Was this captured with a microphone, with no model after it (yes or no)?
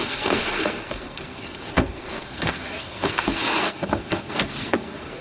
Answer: no